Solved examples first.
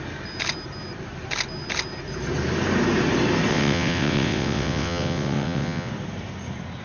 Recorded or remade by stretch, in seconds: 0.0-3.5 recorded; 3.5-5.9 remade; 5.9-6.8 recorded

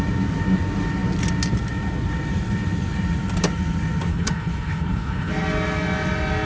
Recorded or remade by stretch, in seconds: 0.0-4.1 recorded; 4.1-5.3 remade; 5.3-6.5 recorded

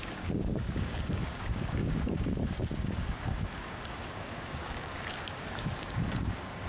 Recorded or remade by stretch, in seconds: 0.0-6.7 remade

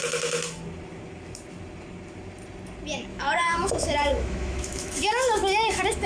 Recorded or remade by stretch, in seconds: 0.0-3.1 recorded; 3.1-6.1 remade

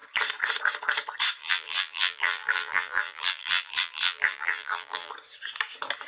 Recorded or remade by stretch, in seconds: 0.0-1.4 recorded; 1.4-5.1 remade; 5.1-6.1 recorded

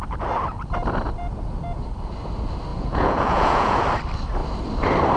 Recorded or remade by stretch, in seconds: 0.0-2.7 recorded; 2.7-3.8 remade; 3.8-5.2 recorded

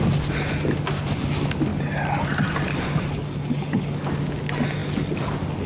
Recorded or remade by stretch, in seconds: 0.0-3.1 recorded; 3.1-4.2 remade; 4.2-5.7 recorded

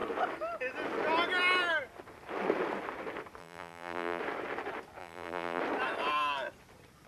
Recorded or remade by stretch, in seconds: 0.0-3.4 recorded; 3.4-4.2 remade; 4.2-5.0 recorded; 5.0-5.6 remade; 5.6-7.1 recorded